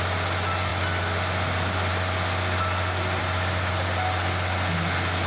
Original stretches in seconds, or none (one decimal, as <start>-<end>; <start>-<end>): 0.0-5.3